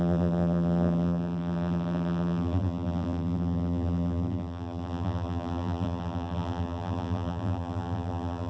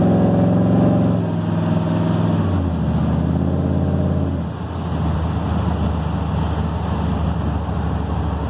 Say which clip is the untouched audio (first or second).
second